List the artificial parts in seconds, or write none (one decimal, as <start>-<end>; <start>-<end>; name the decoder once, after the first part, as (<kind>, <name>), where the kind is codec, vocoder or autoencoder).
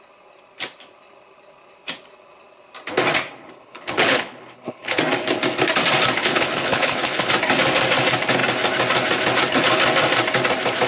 3.4-5.0 (codec, HILCodec); 6.2-7.3